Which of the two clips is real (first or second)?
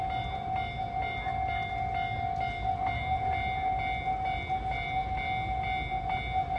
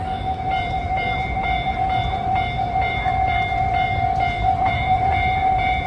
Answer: first